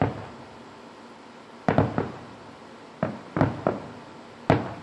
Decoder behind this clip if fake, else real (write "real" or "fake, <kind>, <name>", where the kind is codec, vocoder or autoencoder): real